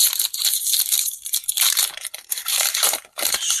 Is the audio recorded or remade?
remade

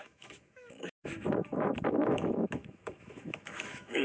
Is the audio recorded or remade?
remade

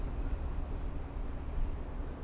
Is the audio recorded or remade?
recorded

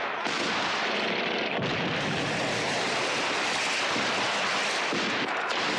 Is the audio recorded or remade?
remade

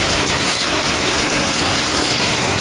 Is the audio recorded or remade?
remade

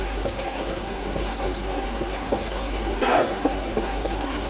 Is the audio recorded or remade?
remade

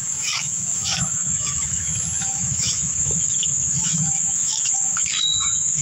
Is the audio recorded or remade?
remade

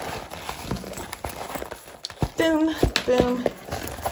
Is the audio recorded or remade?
recorded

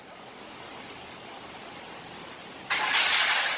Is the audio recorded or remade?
recorded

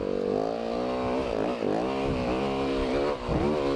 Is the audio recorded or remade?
recorded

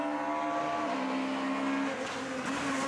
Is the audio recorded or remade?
recorded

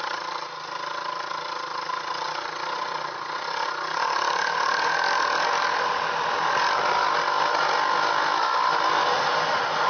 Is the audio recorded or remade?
recorded